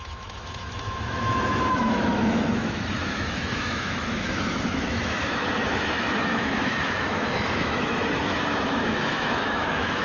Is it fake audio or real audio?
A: fake